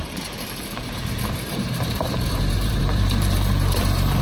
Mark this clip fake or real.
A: fake